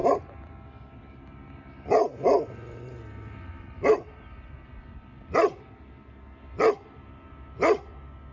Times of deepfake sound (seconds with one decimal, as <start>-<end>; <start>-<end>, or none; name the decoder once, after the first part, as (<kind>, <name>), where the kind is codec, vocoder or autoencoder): none

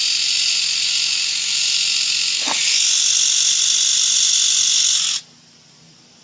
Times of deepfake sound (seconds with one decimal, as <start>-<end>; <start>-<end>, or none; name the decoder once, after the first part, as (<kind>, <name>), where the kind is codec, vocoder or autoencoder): none

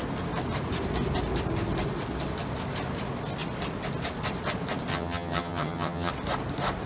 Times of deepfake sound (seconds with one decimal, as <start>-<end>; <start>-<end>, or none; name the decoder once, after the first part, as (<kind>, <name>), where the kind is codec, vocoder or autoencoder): 4.9-6.1 (vocoder, HiFi-GAN)